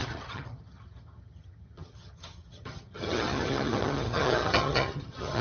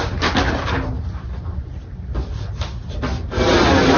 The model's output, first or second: first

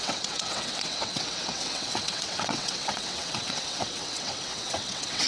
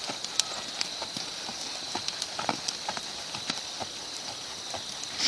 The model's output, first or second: first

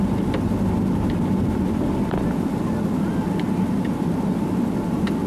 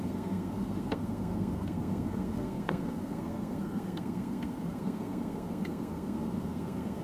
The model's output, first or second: second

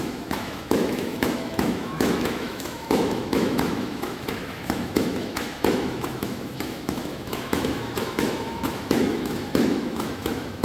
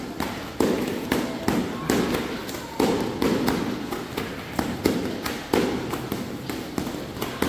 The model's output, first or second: first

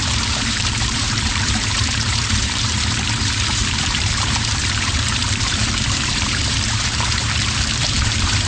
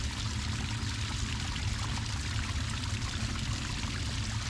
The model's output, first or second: first